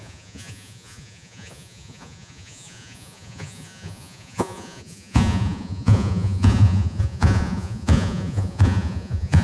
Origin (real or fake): fake